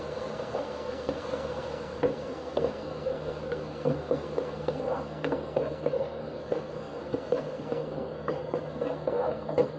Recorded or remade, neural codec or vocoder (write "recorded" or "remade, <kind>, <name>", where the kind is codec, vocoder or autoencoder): remade, codec, SNAC